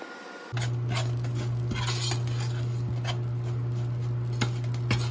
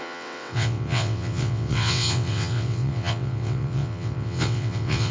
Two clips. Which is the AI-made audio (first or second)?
second